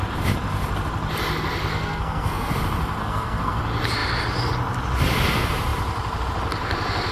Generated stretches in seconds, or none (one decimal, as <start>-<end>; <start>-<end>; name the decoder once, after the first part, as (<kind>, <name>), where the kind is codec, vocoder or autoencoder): 1.7-2.5 (codec, SNAC); 3.0-3.6